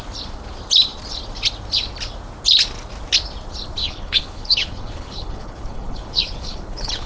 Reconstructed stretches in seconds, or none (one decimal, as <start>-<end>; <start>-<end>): 3.8-7.1